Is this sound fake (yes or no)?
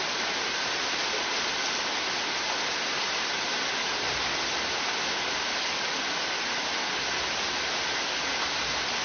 no